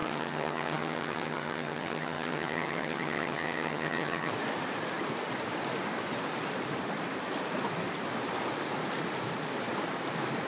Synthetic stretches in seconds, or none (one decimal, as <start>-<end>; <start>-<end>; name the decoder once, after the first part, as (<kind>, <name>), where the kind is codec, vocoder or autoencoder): 0.0-4.3 (vocoder, HiFi-GAN)